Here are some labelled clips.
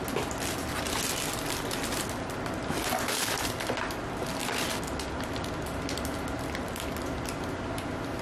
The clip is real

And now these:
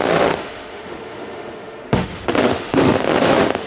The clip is fake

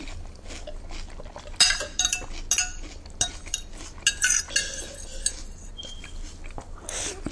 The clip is real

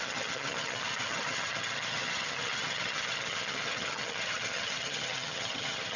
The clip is fake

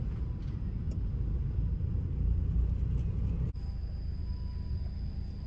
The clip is real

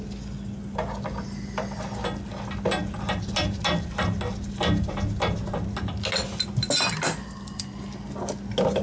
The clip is real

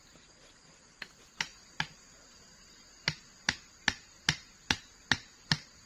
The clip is real